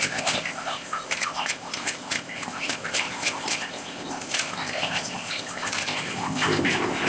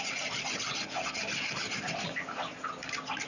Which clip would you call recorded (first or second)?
second